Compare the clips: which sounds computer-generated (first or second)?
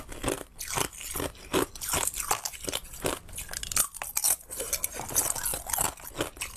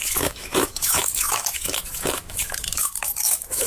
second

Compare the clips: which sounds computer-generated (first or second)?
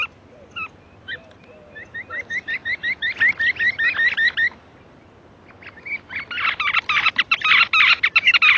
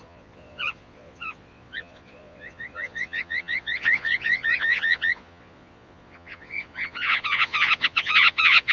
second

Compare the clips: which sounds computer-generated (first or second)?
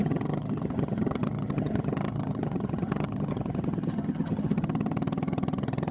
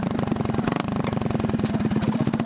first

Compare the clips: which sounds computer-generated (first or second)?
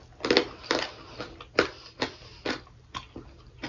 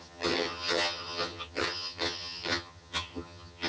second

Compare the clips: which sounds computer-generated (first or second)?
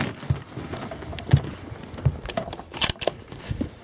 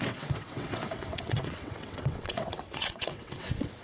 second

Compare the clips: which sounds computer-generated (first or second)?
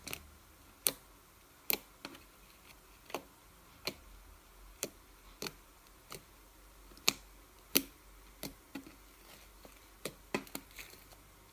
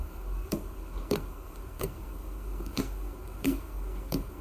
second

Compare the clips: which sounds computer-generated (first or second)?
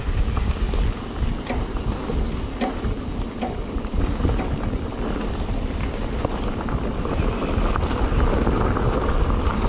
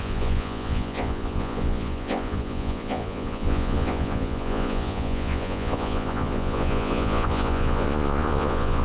second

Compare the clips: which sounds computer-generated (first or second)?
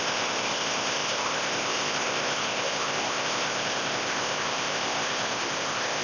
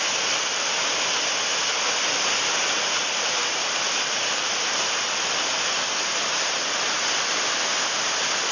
first